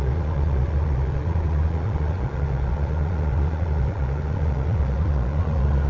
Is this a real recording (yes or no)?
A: no